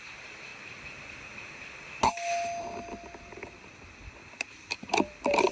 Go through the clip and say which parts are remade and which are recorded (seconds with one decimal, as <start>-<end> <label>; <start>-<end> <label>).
0.0-0.5 remade; 0.5-2.6 recorded; 2.6-5.5 remade